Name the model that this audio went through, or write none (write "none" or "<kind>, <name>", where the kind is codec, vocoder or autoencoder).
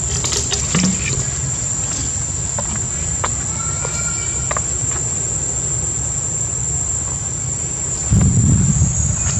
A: none